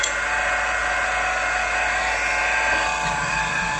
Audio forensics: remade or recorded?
recorded